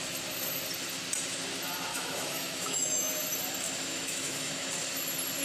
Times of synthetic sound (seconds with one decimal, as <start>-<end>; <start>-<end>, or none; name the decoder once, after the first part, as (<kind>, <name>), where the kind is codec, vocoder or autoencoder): 1.9-3.1 (autoencoder, DAC-VAE); 3.9-4.7